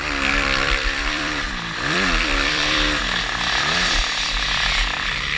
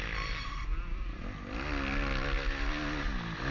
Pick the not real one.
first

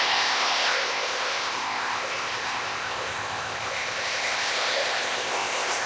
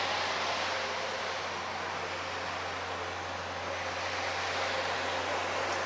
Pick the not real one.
first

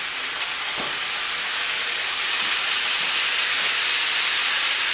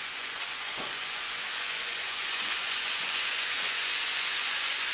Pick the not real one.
second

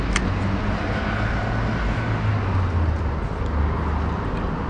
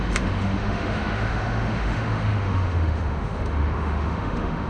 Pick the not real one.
second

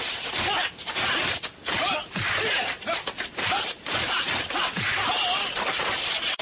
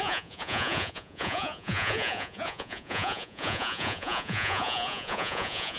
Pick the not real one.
second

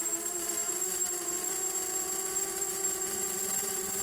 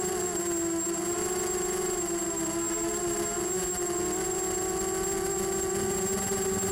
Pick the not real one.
first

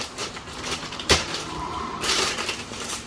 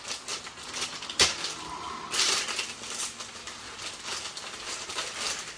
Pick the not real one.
first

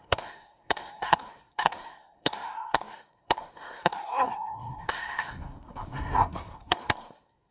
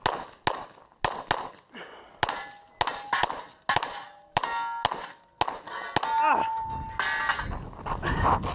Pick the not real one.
first